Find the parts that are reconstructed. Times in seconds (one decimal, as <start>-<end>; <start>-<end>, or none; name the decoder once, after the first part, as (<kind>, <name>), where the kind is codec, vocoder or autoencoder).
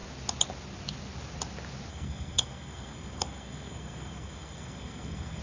1.9-5.4 (codec, SNAC)